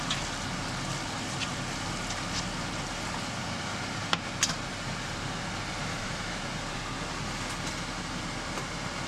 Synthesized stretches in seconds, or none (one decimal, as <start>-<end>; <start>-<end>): 5.9-6.4